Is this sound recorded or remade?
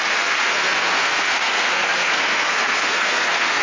remade